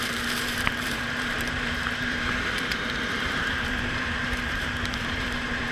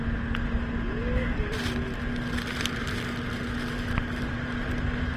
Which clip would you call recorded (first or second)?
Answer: second